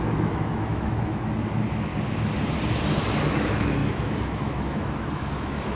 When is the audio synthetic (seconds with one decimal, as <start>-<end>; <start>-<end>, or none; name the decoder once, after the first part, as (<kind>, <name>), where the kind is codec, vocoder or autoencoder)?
0.0-1.9 (autoencoder, DAC-VAE); 3.2-5.8